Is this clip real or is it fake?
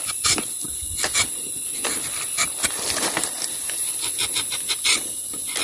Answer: real